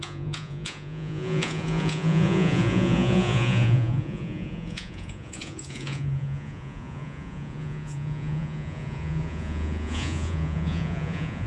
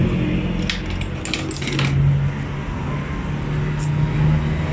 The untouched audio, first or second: second